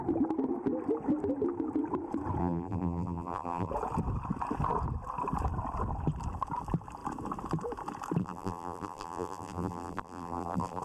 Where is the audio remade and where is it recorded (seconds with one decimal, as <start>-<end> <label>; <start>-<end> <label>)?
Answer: 0.0-2.4 recorded; 2.4-3.7 remade; 3.7-8.2 recorded; 8.2-10.8 remade